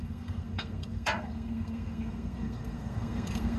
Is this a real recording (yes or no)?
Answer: no